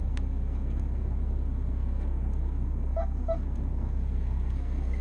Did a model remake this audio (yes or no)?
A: yes